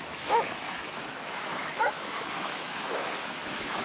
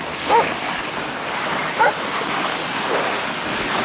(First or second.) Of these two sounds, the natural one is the second